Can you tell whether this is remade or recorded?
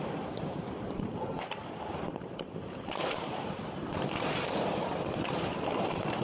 remade